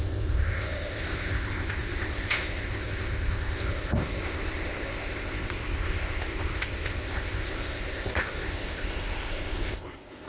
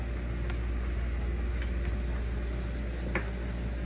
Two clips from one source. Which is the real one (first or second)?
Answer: second